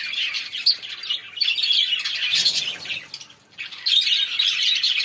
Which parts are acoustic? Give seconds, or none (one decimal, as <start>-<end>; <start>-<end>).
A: 0.0-5.0